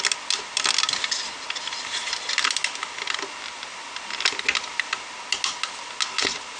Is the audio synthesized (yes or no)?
no